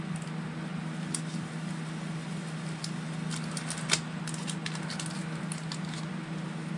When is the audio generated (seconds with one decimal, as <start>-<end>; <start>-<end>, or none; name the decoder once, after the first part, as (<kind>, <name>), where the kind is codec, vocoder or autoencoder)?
none